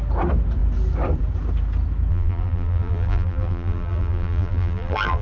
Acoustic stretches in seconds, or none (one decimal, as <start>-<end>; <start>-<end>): 0.0-2.1